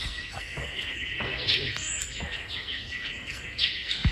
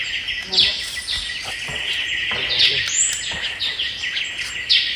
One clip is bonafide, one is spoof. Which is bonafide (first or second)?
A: second